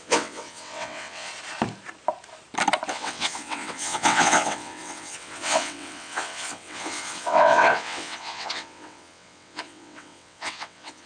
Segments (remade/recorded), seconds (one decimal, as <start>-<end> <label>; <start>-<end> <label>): 0.0-1.3 remade; 1.3-2.9 recorded; 2.9-11.1 remade